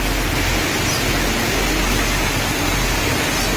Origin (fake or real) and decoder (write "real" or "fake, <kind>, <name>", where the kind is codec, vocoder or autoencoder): real